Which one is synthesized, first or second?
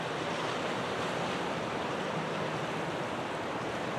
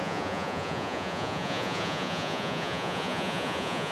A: second